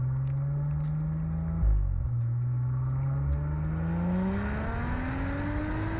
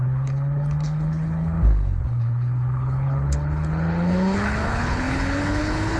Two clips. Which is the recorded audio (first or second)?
first